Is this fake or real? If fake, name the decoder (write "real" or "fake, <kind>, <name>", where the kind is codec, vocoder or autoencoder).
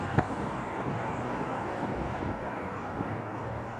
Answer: fake, codec, DAC